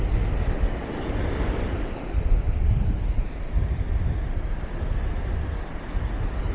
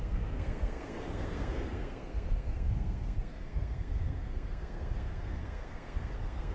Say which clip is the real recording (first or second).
first